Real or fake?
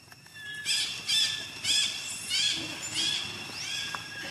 real